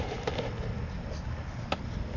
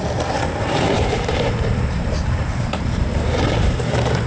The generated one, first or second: second